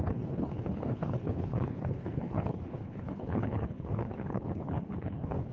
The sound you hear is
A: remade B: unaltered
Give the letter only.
A